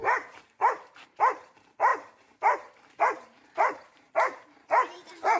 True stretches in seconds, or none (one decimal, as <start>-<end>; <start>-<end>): none